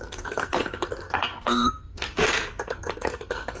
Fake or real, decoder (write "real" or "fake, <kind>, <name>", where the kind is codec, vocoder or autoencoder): fake, codec, SNAC